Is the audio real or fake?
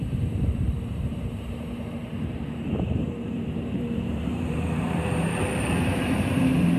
fake